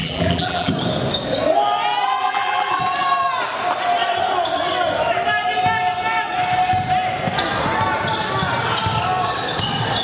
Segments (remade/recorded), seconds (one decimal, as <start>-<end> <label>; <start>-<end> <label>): 0.0-0.7 remade; 0.7-2.2 recorded; 2.2-2.8 remade; 2.8-10.0 recorded

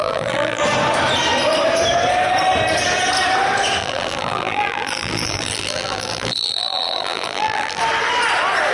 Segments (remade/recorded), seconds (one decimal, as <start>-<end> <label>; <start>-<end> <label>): 0.0-0.6 remade; 0.6-3.8 recorded; 3.8-7.8 remade; 7.8-8.7 recorded

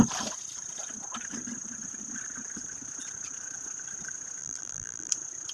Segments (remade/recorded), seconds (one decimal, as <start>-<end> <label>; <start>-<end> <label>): 0.0-4.4 recorded; 4.4-5.1 remade; 5.1-5.5 recorded

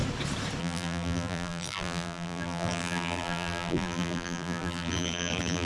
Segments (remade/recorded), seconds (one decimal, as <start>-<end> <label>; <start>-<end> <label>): 0.0-0.6 recorded; 0.6-5.7 remade

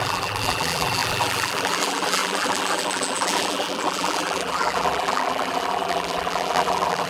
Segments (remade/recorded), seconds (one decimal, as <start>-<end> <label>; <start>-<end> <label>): 0.0-7.1 remade